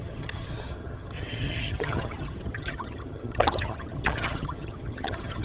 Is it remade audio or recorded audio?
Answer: remade